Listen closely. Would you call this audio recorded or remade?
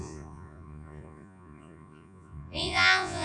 remade